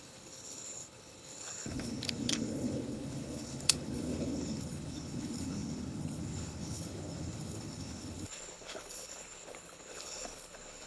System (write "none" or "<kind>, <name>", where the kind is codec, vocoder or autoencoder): codec, HILCodec